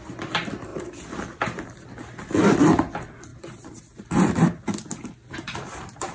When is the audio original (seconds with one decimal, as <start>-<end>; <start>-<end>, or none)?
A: 0.0-3.3; 4.6-6.1